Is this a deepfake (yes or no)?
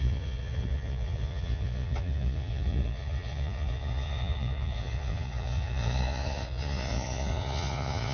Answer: yes